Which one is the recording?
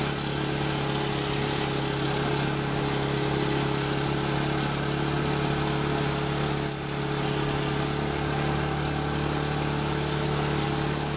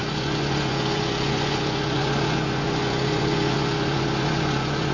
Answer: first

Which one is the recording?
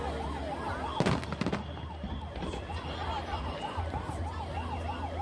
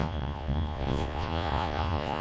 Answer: first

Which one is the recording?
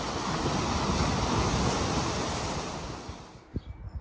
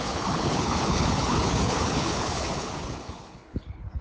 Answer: first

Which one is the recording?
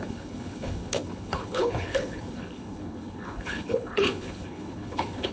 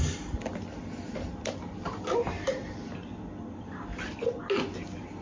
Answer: second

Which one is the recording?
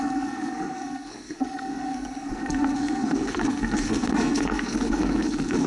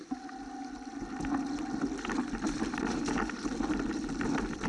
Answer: second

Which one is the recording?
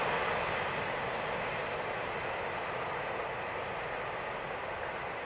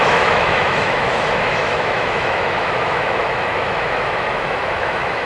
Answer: first